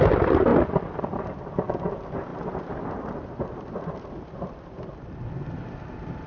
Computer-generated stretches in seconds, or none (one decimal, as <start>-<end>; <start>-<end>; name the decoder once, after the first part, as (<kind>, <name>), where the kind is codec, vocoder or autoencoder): 0.5-1.5 (vocoder, BigVGAN v2); 2.3-5.6